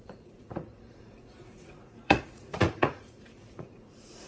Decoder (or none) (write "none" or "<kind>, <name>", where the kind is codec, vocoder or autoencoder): vocoder, Vocos